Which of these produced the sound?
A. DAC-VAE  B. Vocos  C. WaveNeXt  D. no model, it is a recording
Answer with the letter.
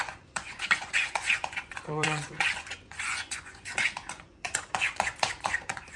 B